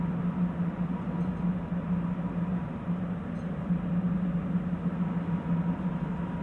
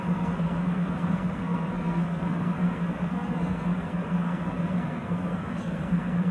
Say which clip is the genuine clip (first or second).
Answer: first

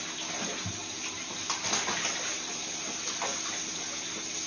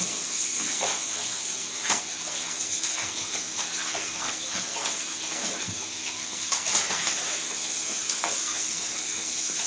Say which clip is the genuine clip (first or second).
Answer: first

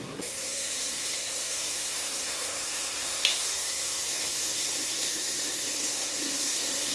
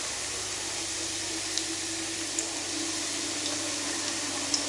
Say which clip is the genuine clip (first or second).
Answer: second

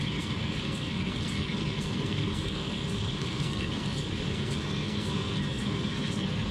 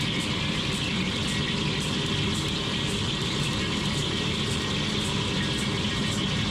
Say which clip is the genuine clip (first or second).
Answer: second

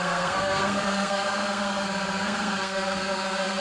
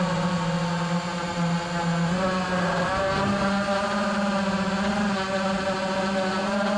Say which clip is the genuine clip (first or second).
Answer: second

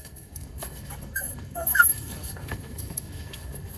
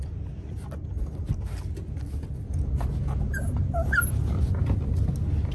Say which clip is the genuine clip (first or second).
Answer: second